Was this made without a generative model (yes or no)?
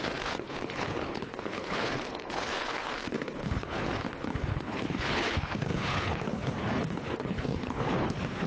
no